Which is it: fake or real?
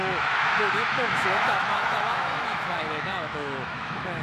fake